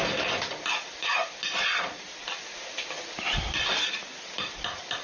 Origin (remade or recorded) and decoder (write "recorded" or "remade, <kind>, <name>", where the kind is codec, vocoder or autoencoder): recorded